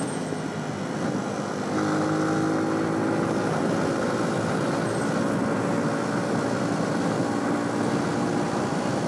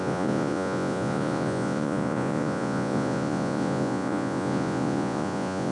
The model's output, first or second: second